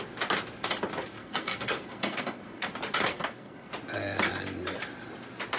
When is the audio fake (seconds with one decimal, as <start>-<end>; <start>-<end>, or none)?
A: 1.2-2.7; 3.1-3.7